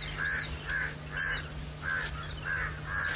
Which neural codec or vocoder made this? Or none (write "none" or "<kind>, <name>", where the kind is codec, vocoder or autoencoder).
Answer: none